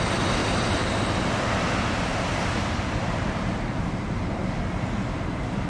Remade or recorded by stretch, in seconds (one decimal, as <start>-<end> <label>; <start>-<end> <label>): 0.0-0.4 recorded; 0.4-1.6 remade; 1.6-2.1 recorded; 2.1-5.7 remade